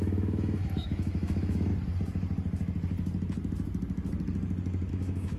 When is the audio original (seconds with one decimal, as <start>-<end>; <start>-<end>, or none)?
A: 1.7-4.9

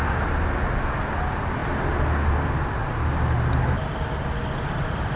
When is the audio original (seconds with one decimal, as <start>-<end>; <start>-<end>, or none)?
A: 0.0-5.2

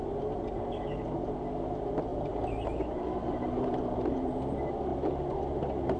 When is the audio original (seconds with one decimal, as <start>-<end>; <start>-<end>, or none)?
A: 0.0-2.1; 4.4-4.9; 5.6-6.0

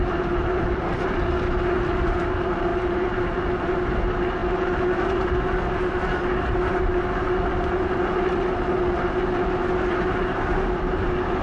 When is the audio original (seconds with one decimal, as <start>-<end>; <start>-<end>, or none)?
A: 0.0-11.4

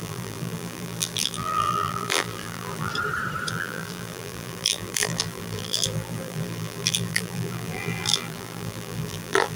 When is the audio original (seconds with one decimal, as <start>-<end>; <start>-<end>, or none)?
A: 2.9-3.5

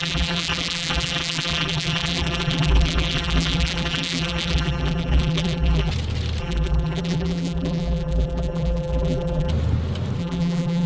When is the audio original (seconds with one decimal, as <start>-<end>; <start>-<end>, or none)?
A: 5.9-6.4; 9.5-10.2

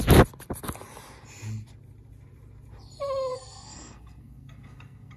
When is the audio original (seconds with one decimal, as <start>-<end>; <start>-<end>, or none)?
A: 0.0-3.3